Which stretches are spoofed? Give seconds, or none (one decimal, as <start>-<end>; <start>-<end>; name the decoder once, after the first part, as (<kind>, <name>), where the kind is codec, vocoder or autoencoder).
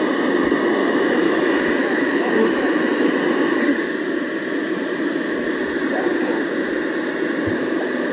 0.8-1.4 (autoencoder, DAC-VAE); 1.8-3.1